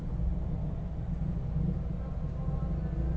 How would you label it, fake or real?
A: real